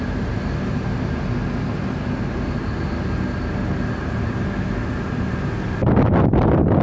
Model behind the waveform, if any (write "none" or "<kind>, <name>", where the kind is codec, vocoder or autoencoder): none